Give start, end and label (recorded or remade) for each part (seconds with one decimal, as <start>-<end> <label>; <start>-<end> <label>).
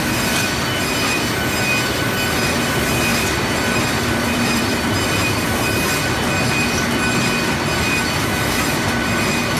0.0-3.1 recorded; 3.1-5.7 remade; 5.7-9.6 recorded